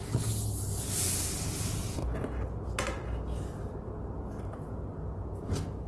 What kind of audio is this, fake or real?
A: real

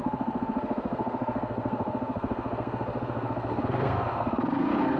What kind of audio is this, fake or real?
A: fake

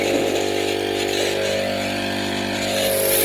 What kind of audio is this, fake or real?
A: real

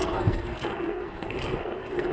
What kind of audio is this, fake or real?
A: fake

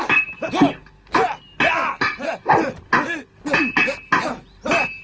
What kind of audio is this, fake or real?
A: real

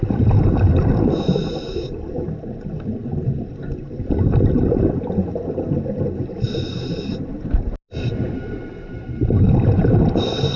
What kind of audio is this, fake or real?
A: real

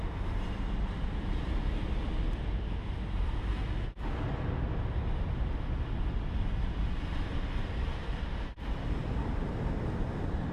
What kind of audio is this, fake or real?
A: real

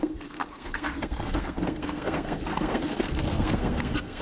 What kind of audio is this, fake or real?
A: fake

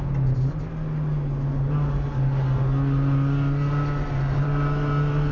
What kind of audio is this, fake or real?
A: real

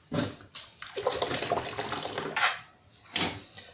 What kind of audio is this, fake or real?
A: real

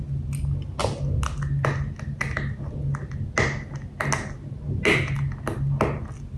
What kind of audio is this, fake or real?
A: real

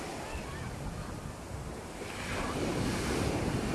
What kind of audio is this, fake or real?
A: real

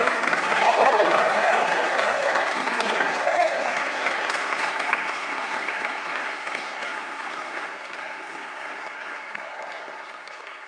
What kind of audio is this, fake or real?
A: fake